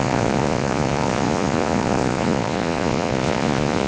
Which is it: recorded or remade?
remade